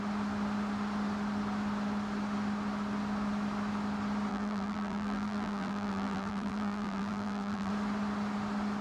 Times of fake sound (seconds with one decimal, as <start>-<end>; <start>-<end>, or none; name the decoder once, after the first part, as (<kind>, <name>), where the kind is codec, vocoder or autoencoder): 4.3-7.7 (vocoder, BigVGAN v2)